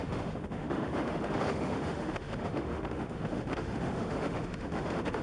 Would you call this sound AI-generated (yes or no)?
yes